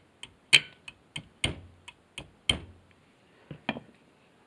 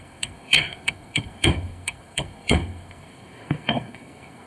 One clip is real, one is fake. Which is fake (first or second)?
second